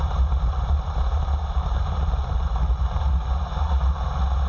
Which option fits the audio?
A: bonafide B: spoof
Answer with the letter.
B